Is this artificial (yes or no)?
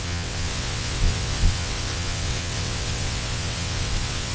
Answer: yes